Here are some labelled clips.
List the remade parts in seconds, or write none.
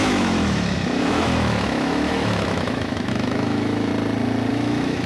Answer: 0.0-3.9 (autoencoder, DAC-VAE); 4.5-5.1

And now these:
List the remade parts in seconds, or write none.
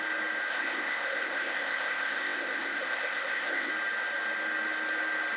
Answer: 0.5-3.7 (codec, ZipCodec)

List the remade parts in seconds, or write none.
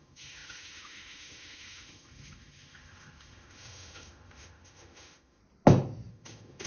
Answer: 0.0-5.4 (autoencoder, DAC-VAE); 6.1-6.7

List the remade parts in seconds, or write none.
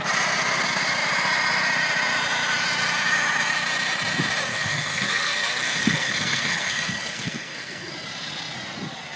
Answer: 4.5-7.9 (codec, SNAC)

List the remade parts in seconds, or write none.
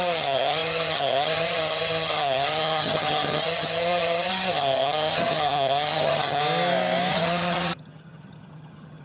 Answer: 0.0-6.4 (vocoder, HiFi-GAN); 7.1-9.0